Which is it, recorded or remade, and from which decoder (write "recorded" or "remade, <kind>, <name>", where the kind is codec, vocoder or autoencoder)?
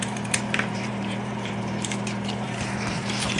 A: remade, vocoder, BigVGAN v2